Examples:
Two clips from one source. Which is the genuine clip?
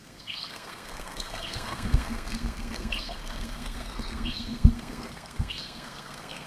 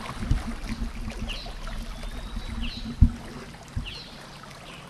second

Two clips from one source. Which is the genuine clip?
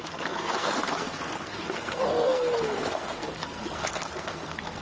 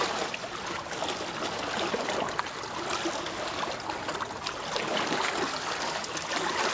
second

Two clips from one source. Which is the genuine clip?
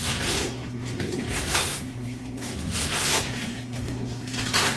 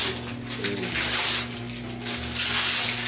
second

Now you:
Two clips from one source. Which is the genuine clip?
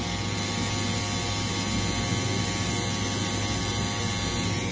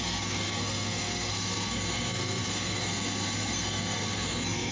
first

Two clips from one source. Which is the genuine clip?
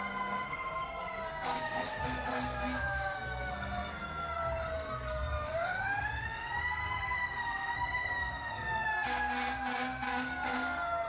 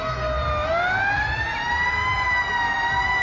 second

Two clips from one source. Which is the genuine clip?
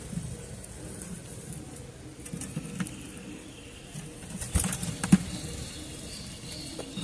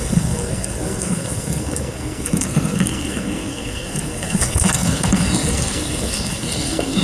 first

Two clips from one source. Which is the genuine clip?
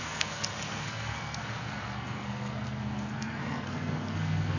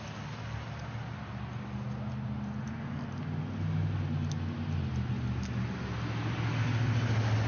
second